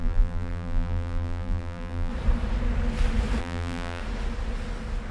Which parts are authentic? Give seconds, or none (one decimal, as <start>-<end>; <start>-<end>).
2.1-3.4; 4.0-5.1